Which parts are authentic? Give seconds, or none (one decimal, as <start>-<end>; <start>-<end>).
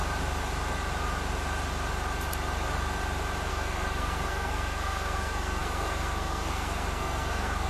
0.0-3.5